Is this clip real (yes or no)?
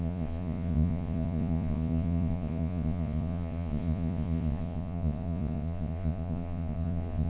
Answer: no